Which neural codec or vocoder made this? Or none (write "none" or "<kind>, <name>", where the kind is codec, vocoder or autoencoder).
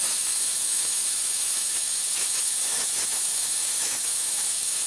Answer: autoencoder, DAC-VAE